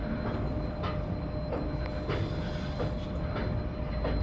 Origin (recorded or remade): recorded